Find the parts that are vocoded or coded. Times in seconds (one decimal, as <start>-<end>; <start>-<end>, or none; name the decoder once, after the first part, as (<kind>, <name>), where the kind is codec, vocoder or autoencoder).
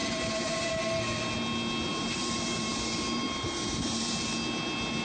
0.0-0.7 (vocoder, BigVGAN v2); 1.9-4.1